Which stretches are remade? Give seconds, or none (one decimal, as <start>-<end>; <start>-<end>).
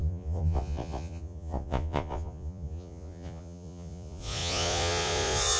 0.0-5.6